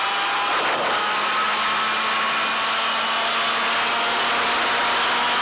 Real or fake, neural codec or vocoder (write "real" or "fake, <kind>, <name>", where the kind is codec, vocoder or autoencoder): real